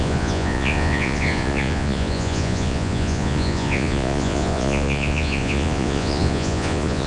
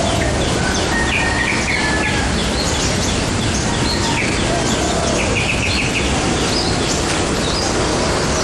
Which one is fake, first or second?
first